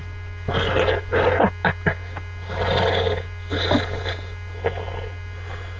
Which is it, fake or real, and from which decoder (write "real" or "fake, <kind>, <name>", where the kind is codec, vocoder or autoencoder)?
real